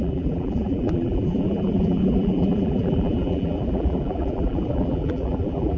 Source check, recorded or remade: remade